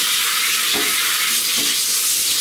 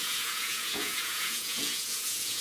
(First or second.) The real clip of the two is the first